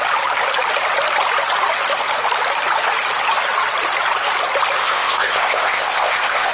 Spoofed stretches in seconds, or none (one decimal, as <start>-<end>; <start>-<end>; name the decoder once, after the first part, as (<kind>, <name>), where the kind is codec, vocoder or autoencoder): 4.8-6.5 (codec, ZipCodec)

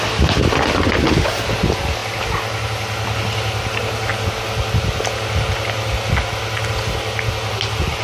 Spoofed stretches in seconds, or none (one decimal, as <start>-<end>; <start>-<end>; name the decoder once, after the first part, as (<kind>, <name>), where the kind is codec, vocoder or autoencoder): none

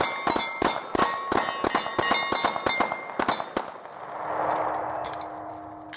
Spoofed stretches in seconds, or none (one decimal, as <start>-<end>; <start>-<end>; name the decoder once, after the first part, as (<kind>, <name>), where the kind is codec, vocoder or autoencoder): none

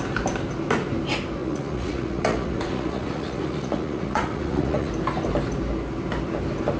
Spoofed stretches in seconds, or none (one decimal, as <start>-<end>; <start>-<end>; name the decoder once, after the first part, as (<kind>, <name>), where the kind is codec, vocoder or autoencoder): 1.4-4.9 (vocoder, Vocos)

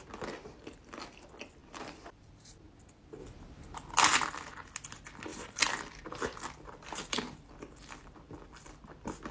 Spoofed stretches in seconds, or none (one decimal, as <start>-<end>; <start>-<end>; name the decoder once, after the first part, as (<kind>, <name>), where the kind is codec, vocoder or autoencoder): 1.6-2.3 (vocoder, BigVGAN v2); 5.3-7.5